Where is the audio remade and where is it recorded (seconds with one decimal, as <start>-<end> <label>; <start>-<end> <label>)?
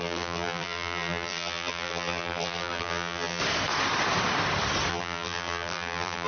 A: 0.0-3.4 remade; 3.4-4.9 recorded; 4.9-6.3 remade